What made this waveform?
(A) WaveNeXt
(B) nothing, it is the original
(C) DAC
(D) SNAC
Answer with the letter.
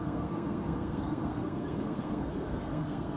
D